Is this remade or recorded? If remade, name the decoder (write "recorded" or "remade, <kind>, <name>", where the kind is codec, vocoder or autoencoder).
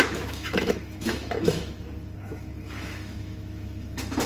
remade, autoencoder, DAC-VAE